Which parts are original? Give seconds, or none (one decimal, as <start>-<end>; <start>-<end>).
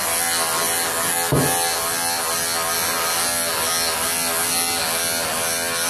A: 0.0-5.9